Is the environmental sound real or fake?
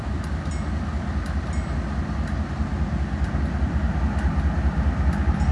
real